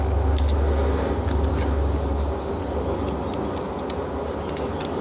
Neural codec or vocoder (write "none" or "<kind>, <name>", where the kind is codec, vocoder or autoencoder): none